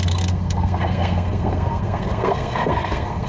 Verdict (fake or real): fake